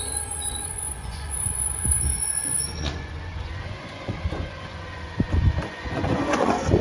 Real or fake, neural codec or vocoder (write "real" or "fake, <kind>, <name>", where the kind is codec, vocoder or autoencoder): fake, vocoder, Vocos